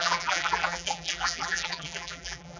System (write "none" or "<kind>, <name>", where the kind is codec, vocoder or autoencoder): vocoder, BigVGAN v2